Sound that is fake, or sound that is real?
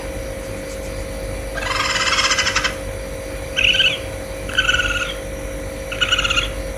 real